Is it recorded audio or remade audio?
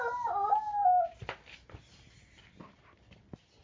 recorded